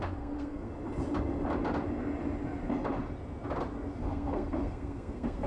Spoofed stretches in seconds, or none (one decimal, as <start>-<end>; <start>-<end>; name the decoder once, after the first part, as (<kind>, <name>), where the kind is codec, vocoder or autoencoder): 0.0-0.7 (codec, SNAC); 4.0-5.5